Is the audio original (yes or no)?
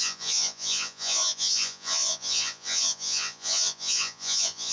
no